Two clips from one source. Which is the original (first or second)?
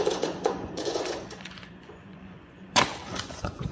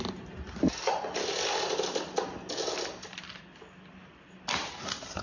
second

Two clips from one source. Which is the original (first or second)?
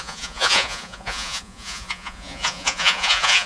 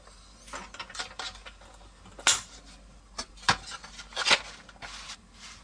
second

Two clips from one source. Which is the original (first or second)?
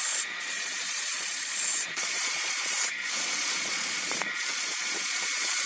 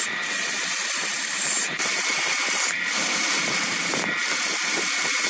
second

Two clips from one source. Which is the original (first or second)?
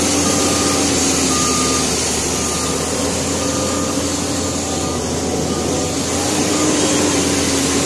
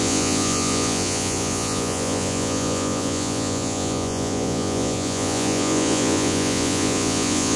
first